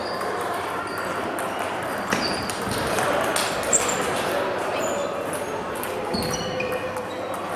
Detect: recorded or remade recorded